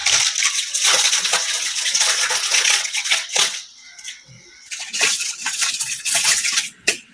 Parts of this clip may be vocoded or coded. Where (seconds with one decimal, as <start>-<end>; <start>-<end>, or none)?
0.5-7.1